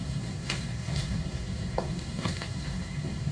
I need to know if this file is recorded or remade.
remade